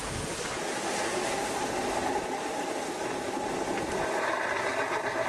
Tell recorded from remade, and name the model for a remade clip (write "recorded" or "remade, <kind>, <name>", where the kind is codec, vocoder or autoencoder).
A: recorded